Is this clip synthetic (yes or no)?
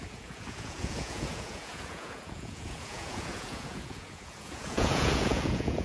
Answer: yes